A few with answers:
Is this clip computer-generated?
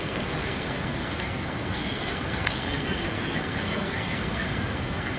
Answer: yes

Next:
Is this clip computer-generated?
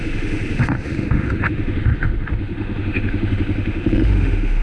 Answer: yes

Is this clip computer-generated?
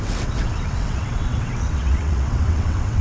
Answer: yes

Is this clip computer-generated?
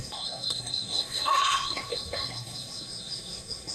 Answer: yes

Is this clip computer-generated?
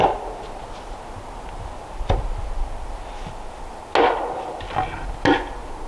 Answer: no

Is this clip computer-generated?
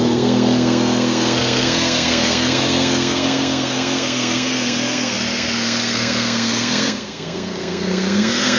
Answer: yes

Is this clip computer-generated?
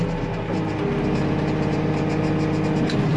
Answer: no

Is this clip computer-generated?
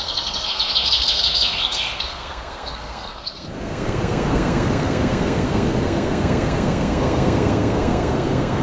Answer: yes